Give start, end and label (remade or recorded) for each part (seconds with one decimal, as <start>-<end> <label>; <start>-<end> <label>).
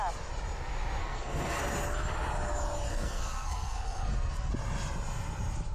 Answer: 0.0-1.0 recorded; 1.0-1.6 remade; 1.6-2.9 recorded; 2.9-4.5 remade; 4.5-5.7 recorded